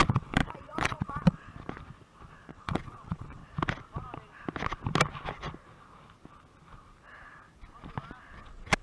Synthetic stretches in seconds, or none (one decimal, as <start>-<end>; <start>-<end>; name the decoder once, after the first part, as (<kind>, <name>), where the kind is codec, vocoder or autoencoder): 0.0-1.5 (vocoder, WaveNeXt); 2.5-3.4; 8.4-8.8